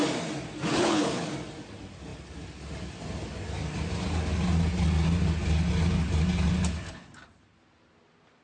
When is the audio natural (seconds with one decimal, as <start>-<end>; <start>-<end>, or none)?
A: 0.0-0.7; 1.3-8.4